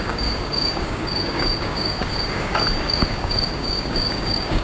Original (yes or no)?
no